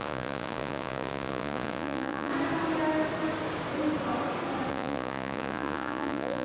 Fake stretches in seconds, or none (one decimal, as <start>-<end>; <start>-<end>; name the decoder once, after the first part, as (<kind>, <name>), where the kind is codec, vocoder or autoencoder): 0.0-2.3 (vocoder, Vocos); 4.7-6.4